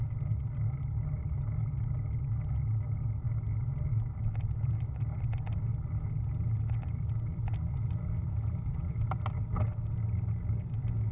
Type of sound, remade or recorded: recorded